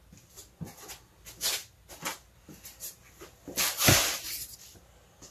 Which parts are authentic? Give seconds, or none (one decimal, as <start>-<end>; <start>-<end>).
0.0-5.3